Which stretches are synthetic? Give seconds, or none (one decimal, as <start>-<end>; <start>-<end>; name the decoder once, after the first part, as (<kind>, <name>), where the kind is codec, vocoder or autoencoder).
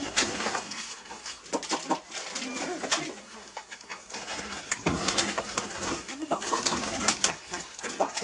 0.0-1.4 (codec, SNAC); 3.2-8.2